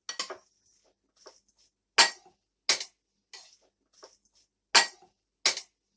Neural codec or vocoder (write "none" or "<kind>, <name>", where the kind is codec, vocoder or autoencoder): none